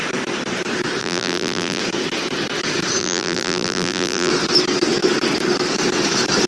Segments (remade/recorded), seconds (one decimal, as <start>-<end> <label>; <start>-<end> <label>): 0.0-1.0 recorded; 1.0-1.8 remade; 1.8-3.0 recorded; 3.0-4.3 remade; 4.3-6.5 recorded